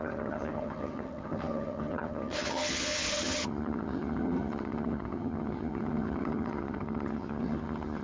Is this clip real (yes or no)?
no